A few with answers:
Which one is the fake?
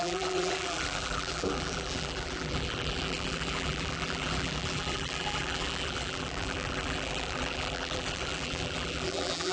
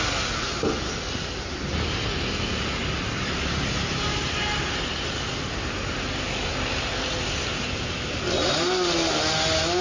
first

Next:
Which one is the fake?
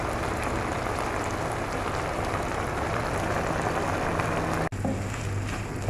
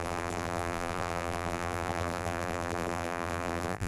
second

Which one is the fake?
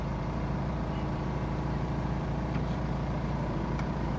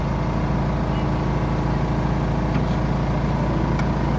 first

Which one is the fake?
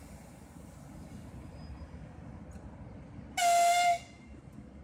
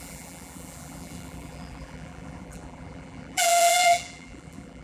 second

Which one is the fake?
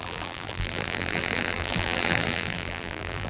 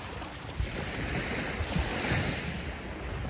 first